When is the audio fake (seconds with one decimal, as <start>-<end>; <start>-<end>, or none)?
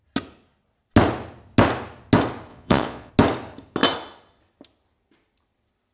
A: 2.5-3.1